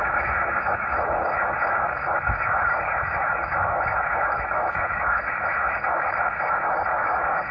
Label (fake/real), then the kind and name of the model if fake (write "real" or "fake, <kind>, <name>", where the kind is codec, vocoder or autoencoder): fake, autoencoder, DAC-VAE